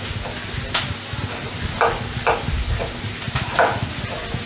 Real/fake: real